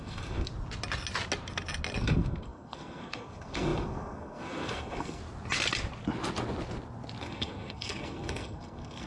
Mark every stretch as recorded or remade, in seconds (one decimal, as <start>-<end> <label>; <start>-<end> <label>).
0.0-0.5 remade; 0.5-2.0 recorded; 2.0-5.2 remade; 5.2-7.2 recorded; 7.2-9.1 remade